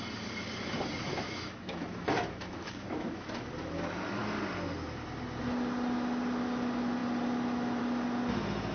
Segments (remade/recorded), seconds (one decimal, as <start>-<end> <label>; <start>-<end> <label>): 0.0-1.1 recorded; 1.1-3.5 remade; 3.5-8.7 recorded